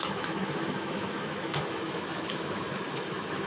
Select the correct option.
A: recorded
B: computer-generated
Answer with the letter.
B